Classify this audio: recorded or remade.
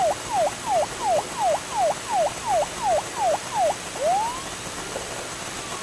recorded